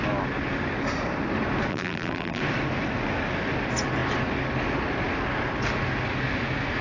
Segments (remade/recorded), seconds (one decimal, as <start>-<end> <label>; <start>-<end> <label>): 0.0-1.7 recorded; 1.7-2.4 remade; 2.4-6.8 recorded